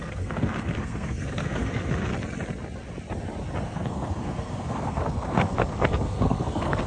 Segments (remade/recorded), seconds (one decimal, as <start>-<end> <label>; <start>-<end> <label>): 0.0-2.1 remade; 2.1-3.6 recorded; 3.6-6.9 remade